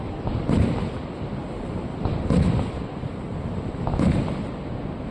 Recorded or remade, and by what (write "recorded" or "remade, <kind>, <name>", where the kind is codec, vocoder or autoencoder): recorded